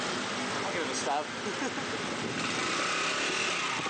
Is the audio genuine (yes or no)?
yes